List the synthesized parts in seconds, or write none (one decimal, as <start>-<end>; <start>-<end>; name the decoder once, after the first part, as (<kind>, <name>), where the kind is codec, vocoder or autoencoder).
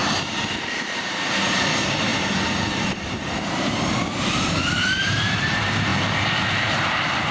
0.5-7.3 (vocoder, BigVGAN v2)